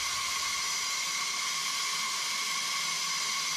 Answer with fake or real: real